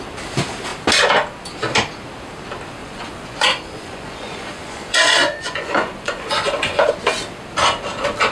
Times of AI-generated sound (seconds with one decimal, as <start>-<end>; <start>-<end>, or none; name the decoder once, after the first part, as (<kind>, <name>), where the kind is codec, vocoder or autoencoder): 2.8-6.9 (vocoder, Vocos)